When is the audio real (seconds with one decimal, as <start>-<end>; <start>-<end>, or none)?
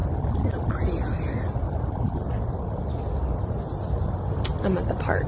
0.0-5.3